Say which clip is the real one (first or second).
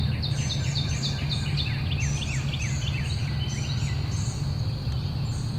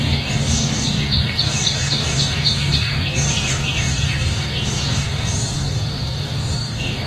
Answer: first